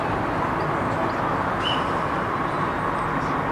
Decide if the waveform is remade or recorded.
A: recorded